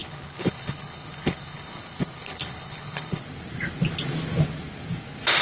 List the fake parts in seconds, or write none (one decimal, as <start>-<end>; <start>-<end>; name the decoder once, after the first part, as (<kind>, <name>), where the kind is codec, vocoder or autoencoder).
0.0-3.2 (codec, HILCodec)